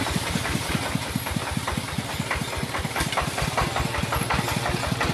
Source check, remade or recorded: recorded